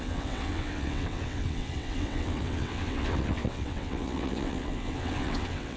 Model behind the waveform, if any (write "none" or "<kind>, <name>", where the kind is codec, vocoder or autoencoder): vocoder, WaveNeXt